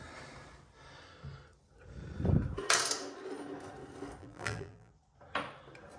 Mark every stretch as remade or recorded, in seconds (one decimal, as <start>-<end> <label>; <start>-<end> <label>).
0.0-4.2 recorded; 4.2-4.9 remade; 4.9-6.0 recorded